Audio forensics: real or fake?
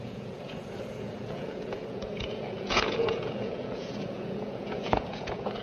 fake